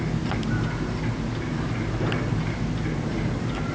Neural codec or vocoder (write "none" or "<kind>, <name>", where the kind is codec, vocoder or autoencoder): none